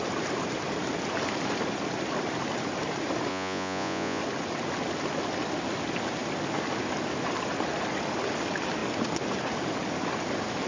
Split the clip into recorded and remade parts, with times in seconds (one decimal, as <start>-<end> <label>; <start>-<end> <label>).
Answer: 0.0-3.3 recorded; 3.3-4.2 remade; 4.2-10.7 recorded